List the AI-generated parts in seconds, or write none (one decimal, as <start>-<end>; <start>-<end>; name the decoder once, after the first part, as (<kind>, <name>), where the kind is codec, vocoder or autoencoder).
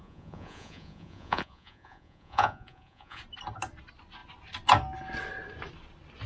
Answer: 0.0-3.2 (vocoder, Vocos)